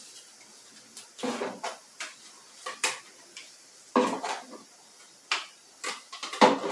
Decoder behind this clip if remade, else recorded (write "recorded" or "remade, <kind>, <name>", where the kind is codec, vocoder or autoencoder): remade, vocoder, BigVGAN v2